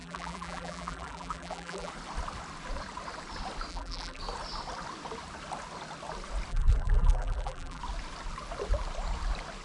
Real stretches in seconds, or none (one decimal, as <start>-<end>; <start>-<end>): 1.9-3.7; 4.2-6.5; 7.8-9.6